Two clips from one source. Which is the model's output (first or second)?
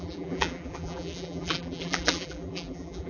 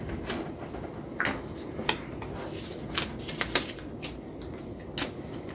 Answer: first